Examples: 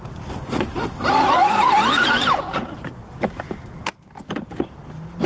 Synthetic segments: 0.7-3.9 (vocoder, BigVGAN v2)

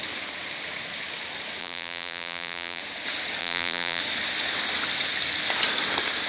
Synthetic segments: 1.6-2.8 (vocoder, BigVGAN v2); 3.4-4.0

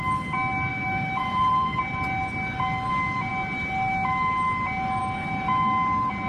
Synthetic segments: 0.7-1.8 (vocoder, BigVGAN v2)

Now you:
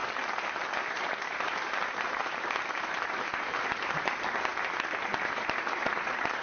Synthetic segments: 0.9-4.5 (vocoder, BigVGAN v2); 5.2-6.4

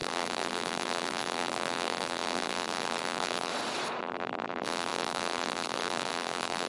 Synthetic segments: 0.0-3.5 (vocoder, BigVGAN v2); 4.0-6.7

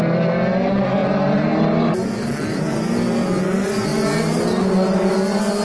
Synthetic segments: 3.9-4.5 (vocoder, BigVGAN v2)

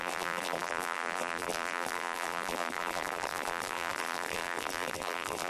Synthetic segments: 0.0-5.5 (vocoder, BigVGAN v2)